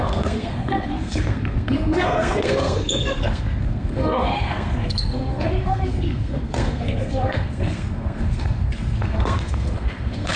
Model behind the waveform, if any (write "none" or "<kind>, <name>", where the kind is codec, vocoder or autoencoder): codec, SNAC